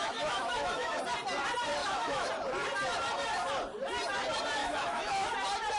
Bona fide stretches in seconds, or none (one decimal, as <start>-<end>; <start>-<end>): 1.0-1.8; 2.3-4.6; 5.3-5.8